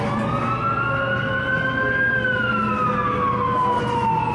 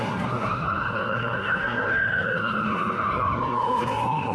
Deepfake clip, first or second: second